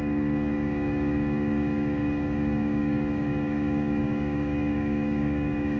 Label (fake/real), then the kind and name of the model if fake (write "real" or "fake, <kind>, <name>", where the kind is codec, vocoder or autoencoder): fake, codec, DAC